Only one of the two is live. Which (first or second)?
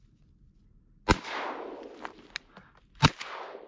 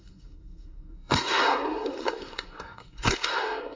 first